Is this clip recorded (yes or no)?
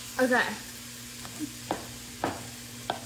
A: yes